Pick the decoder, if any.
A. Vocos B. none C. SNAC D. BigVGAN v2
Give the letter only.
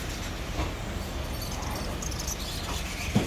B